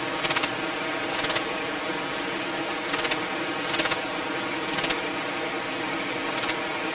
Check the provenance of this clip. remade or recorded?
recorded